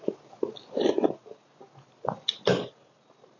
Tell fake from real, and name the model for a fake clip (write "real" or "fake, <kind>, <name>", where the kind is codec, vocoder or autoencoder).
real